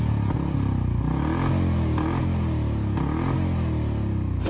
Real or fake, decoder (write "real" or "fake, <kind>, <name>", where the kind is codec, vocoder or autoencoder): real